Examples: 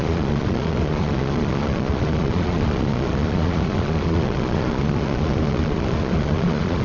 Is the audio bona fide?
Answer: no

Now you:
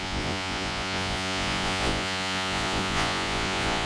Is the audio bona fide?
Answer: no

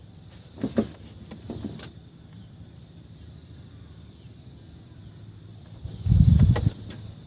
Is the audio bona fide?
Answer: yes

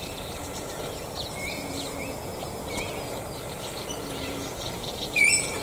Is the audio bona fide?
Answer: no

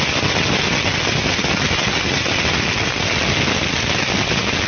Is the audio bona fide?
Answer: yes